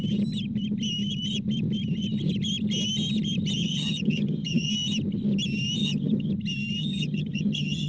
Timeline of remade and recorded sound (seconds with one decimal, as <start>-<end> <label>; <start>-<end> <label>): 0.0-3.6 recorded; 3.6-4.7 remade; 4.7-5.8 recorded; 5.8-6.3 remade; 6.3-6.8 recorded; 6.8-7.9 remade